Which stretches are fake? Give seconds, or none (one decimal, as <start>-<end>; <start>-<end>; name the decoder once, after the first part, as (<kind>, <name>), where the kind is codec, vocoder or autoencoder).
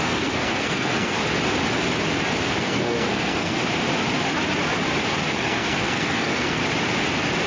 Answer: 0.0-1.2 (codec, SNAC); 2.6-3.6; 5.3-6.6